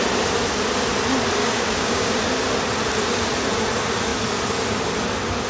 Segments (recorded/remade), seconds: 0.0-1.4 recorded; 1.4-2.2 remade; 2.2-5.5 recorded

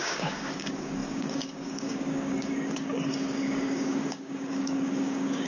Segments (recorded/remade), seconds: 0.0-5.5 remade

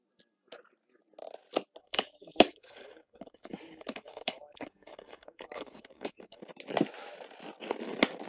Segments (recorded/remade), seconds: 0.0-1.8 recorded; 1.8-6.4 remade; 6.4-8.3 recorded

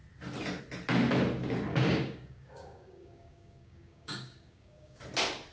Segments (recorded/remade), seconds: 0.0-1.7 recorded; 1.7-5.0 remade; 5.0-5.5 recorded